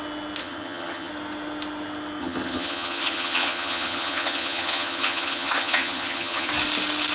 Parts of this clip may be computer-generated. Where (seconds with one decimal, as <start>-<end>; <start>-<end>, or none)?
0.4-1.1; 2.2-6.5